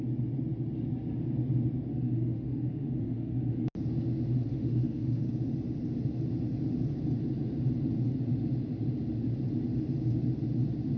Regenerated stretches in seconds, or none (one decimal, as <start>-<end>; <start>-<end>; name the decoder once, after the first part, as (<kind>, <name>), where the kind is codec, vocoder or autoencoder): 1.9-3.7 (autoencoder, DAC-VAE); 4.5-5.3